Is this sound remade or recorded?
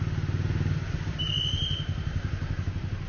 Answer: recorded